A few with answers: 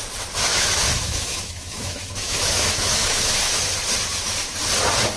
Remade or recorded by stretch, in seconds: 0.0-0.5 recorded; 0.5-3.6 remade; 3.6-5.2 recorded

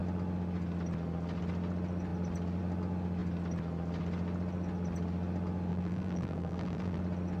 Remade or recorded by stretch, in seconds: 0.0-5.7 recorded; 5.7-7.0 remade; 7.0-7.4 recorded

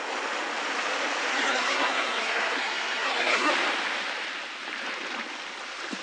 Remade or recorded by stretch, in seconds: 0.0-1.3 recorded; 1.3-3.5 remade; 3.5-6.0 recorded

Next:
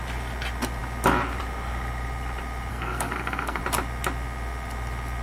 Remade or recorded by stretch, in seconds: 0.0-2.7 recorded; 2.7-3.6 remade; 3.6-5.2 recorded

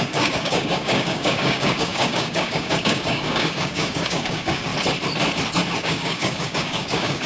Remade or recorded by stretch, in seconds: 0.0-4.7 remade; 4.7-5.8 recorded; 5.8-7.3 remade